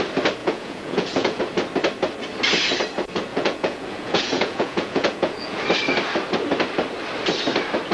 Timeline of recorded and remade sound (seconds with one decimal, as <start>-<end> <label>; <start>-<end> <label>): 0.0-0.4 recorded; 0.4-1.4 remade; 1.4-3.3 recorded; 3.3-5.6 remade; 5.6-7.9 recorded